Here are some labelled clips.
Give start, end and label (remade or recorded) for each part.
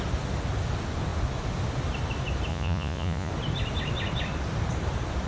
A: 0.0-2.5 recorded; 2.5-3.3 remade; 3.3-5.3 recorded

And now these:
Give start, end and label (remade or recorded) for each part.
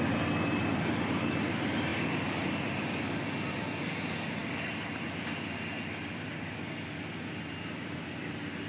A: 0.0-8.7 recorded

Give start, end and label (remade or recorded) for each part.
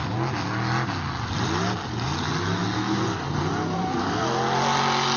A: 0.0-5.2 recorded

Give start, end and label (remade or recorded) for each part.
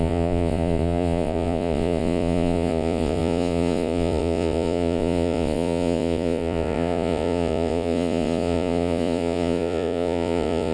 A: 0.0-10.7 remade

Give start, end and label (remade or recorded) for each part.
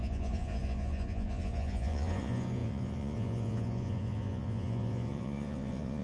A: 0.0-6.0 remade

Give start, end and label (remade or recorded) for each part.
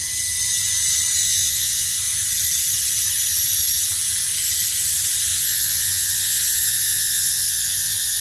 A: 0.0-1.2 recorded; 1.2-2.0 remade; 2.0-5.3 recorded; 5.3-8.2 remade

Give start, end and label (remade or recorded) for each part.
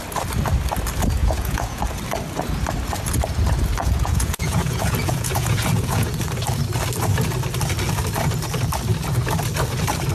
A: 0.0-1.2 recorded; 1.2-1.8 remade; 1.8-3.8 recorded; 3.8-6.2 remade; 6.2-10.1 recorded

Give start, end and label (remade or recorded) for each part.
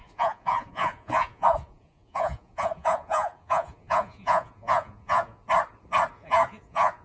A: 0.0-5.4 remade; 5.4-6.1 recorded; 6.1-7.0 remade